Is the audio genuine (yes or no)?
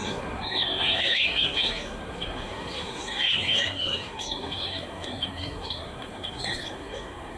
no